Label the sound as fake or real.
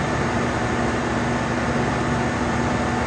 real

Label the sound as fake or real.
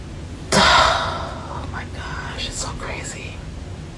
real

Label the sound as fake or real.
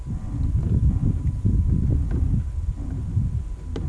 real